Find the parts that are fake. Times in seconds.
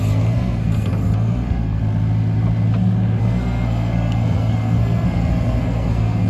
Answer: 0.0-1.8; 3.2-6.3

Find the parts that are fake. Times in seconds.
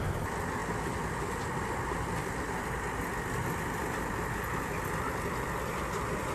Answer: none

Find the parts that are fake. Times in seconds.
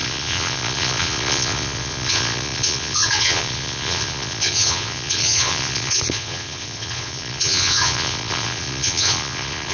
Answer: 0.0-9.7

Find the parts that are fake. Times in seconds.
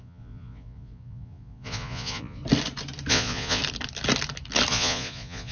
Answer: 0.0-2.4; 3.1-3.6; 4.7-5.5